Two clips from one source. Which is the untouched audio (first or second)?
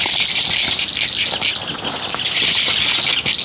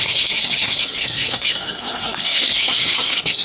first